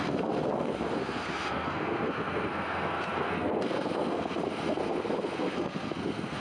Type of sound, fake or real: fake